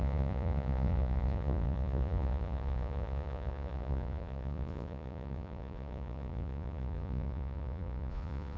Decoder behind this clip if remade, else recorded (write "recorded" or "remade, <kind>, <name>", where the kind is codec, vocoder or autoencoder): remade, vocoder, Vocos